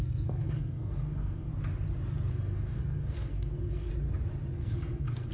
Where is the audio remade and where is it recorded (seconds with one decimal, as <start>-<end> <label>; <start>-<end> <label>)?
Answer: 0.0-1.5 remade; 1.5-2.3 recorded; 2.3-3.9 remade; 3.9-4.5 recorded; 4.5-5.3 remade